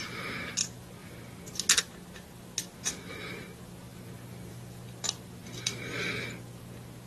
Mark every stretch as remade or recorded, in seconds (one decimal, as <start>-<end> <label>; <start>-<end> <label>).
0.0-7.1 recorded